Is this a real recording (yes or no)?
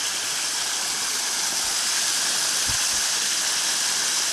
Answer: yes